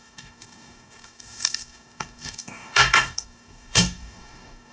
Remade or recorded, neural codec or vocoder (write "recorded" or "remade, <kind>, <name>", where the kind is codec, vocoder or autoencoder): remade, codec, DAC